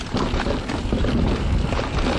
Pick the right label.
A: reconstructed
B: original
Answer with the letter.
B